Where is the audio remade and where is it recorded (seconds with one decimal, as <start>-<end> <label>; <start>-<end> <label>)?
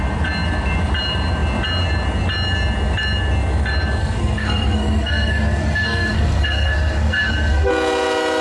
0.0-4.0 recorded; 4.0-7.7 remade; 7.7-8.4 recorded